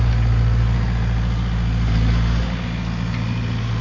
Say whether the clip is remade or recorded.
recorded